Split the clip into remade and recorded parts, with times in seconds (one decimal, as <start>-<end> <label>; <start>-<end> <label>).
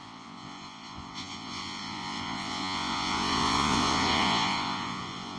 0.0-5.4 remade